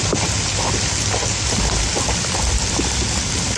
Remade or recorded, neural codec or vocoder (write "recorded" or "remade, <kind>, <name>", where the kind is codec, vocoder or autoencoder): recorded